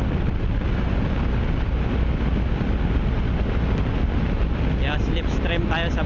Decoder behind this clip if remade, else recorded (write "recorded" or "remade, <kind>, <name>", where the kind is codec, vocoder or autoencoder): recorded